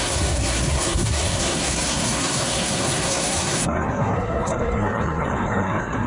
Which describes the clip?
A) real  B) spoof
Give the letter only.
B